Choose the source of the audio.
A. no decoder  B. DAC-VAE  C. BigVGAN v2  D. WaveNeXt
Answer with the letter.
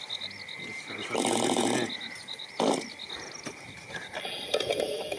A